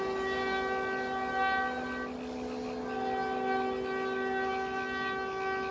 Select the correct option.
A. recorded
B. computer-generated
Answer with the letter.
A